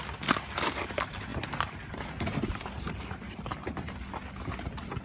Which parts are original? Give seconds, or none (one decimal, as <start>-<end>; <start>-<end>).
0.0-5.0